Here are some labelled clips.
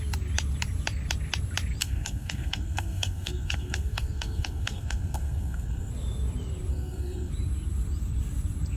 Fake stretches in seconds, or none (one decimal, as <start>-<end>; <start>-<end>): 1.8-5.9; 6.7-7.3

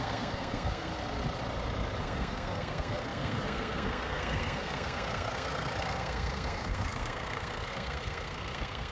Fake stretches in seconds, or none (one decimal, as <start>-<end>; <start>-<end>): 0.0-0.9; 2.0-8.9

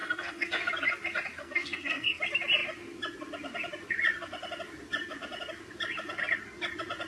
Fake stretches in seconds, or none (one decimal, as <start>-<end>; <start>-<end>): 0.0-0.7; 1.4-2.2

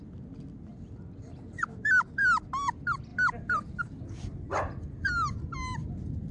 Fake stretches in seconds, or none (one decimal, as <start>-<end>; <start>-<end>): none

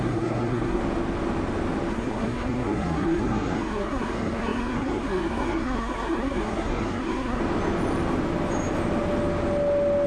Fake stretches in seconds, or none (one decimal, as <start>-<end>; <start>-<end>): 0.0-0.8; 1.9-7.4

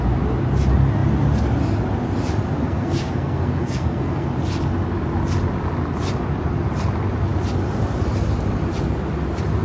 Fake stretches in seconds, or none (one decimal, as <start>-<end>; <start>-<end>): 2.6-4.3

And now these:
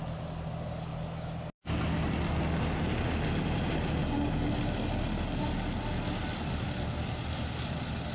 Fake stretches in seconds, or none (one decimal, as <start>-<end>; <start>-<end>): none

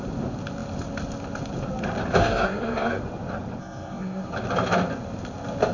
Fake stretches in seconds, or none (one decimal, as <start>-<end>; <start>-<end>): 2.2-3.0; 3.6-4.3